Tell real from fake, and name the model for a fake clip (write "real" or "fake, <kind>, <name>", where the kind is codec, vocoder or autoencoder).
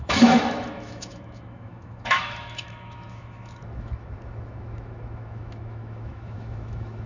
fake, autoencoder, DAC-VAE